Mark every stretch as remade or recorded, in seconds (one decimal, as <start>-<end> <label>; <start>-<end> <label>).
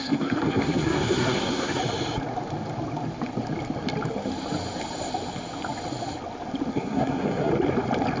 0.0-1.8 remade; 1.8-6.7 recorded; 6.7-7.5 remade; 7.5-8.2 recorded